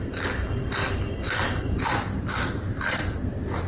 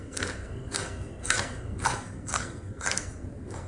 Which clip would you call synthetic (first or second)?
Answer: second